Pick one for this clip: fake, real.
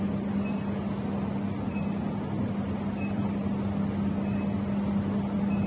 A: real